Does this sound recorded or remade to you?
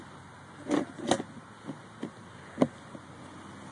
recorded